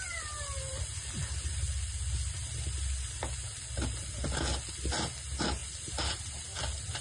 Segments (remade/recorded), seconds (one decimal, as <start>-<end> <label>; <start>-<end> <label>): 0.0-7.0 recorded